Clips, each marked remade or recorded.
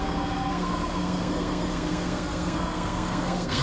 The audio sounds remade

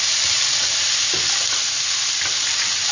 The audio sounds recorded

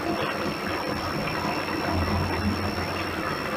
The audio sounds recorded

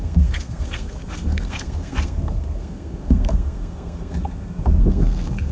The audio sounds remade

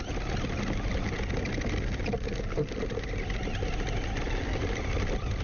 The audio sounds recorded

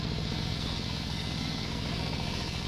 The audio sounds remade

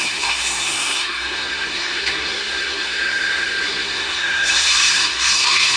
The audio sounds remade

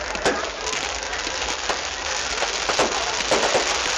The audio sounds recorded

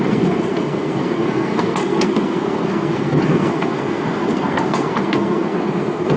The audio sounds remade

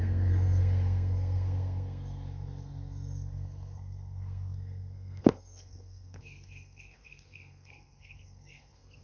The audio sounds remade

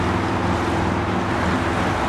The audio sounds recorded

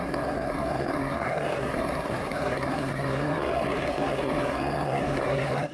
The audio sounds remade